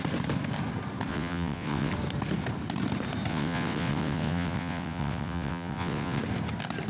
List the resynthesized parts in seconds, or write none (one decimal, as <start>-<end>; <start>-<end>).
1.1-1.9; 3.3-6.2